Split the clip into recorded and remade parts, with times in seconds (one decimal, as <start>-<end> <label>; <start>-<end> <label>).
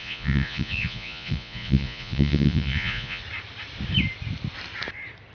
0.0-3.2 remade; 3.2-5.3 recorded